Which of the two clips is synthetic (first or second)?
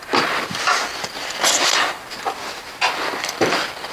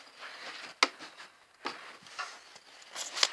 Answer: first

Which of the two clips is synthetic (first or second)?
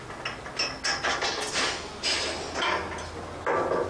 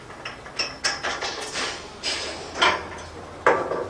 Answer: second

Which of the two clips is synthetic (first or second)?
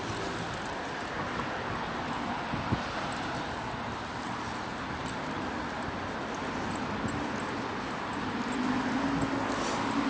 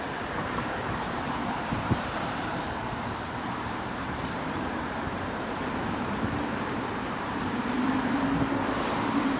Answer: second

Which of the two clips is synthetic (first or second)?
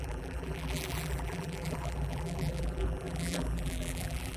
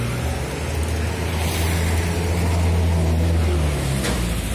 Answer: first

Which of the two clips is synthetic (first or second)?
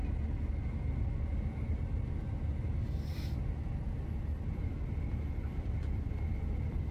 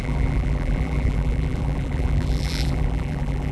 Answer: second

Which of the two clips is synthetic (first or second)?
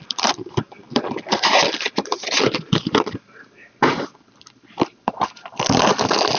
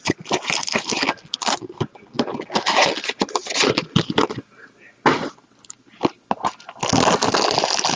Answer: first